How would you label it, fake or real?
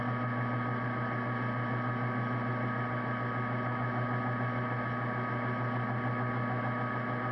real